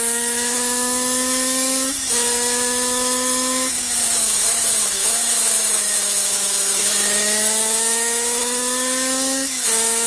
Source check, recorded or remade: remade